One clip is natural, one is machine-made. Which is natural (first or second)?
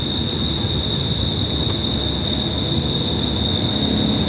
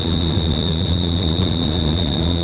first